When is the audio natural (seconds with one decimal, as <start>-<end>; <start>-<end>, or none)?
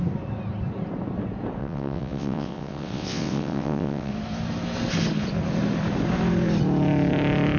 0.0-1.6; 4.1-7.6